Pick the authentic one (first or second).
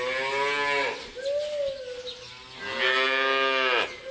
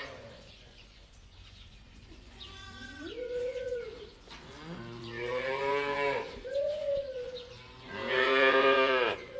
first